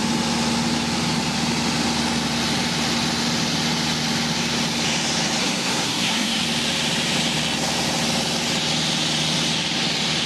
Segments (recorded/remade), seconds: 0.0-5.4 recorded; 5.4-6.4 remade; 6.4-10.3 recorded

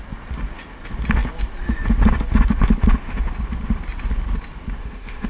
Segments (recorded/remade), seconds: 0.0-4.8 recorded; 4.8-5.3 remade

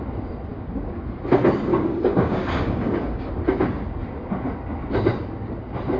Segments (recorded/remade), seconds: 0.0-0.5 recorded; 0.5-1.0 remade; 1.0-1.7 recorded; 1.7-3.3 remade; 3.3-6.0 recorded